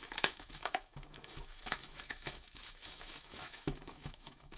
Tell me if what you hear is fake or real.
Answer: fake